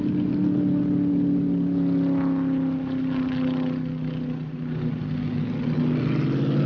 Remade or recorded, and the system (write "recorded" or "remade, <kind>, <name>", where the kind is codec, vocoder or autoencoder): recorded